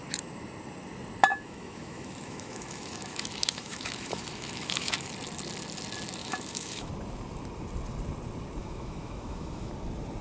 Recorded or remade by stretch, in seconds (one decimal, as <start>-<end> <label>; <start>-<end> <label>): 0.0-1.3 recorded; 1.3-5.1 remade; 5.1-6.2 recorded; 6.2-6.9 remade; 6.9-8.6 recorded; 8.6-9.7 remade; 9.7-10.2 recorded